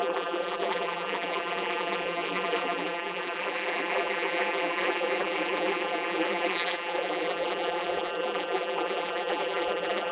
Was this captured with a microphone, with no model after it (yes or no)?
no